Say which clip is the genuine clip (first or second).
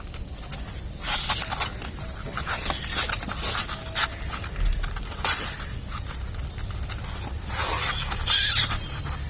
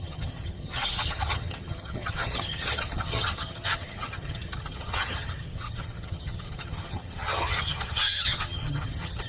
first